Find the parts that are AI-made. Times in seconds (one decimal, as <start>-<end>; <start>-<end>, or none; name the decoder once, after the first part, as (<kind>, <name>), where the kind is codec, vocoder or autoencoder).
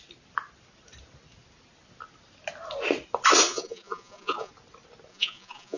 3.5-4.5 (vocoder, Vocos); 5.1-5.8